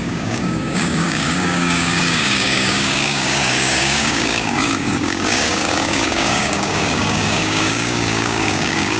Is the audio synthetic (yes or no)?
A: yes